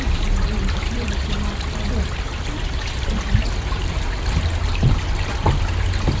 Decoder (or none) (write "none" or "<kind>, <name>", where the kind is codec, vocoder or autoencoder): none